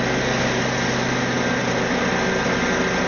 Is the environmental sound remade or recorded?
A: recorded